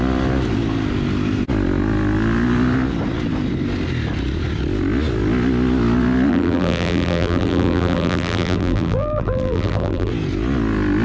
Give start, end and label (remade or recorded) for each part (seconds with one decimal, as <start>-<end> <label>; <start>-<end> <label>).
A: 0.0-6.3 recorded; 6.3-10.1 remade; 10.1-11.0 recorded